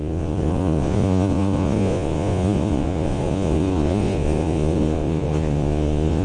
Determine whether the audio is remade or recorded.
remade